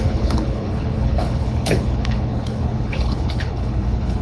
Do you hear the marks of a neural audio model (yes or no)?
yes